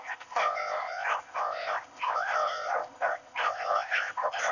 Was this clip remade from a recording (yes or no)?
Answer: yes